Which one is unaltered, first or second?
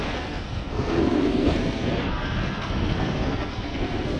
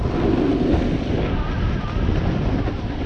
second